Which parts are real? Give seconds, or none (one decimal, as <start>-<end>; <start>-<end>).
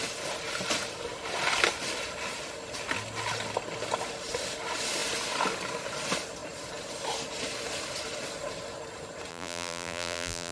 0.0-9.3